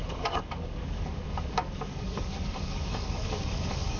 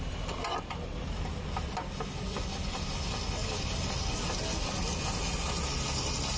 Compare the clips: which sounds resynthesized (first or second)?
first